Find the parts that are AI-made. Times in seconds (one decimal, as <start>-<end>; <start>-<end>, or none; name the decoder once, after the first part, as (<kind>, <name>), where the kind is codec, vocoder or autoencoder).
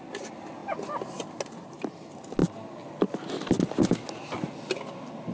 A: none